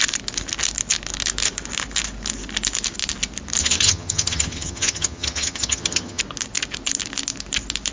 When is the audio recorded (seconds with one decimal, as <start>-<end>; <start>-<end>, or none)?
0.0-3.6; 6.2-7.9